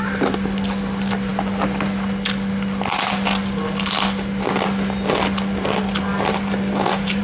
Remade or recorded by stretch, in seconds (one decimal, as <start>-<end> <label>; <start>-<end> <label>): 0.0-6.1 recorded; 6.1-7.2 remade